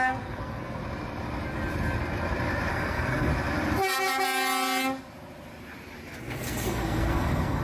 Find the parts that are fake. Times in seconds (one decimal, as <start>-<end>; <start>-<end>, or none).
0.0-0.8; 2.7-3.3; 6.2-7.6